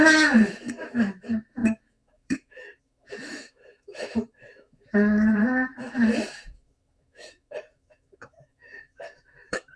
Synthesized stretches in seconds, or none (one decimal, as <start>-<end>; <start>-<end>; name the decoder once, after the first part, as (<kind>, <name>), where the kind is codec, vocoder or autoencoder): 0.0-9.8 (autoencoder, DAC-VAE)